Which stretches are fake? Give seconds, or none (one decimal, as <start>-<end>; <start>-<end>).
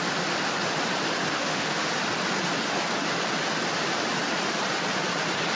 1.3-1.9